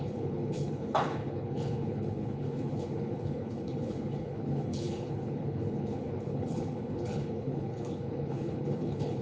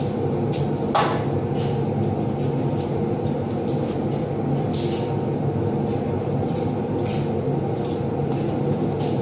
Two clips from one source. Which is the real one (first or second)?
second